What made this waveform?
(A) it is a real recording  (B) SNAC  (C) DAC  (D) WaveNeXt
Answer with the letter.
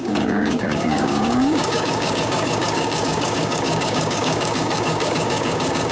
C